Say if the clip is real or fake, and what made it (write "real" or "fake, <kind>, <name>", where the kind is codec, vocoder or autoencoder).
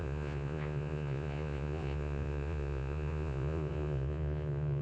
fake, vocoder, Vocos